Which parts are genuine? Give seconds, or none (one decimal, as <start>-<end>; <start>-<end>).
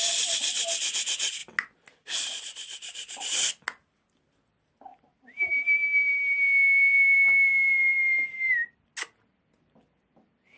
0.0-10.6